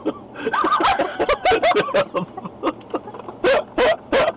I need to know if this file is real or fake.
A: real